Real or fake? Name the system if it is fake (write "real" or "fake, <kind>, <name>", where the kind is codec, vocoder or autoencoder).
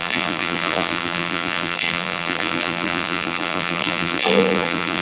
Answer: fake, vocoder, BigVGAN v2